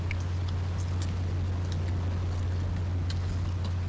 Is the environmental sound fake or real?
real